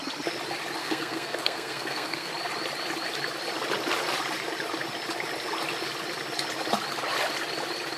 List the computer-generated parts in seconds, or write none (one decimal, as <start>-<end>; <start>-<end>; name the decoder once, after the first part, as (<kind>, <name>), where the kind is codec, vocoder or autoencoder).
0.8-2.3 (codec, SNAC)